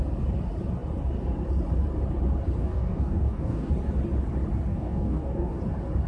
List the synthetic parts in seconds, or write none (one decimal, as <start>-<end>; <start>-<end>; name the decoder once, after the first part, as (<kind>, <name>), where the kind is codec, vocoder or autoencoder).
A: 2.6-3.7 (codec, DAC); 4.7-5.6